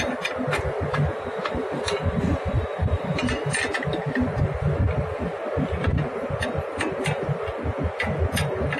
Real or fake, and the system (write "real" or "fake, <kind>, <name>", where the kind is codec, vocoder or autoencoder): real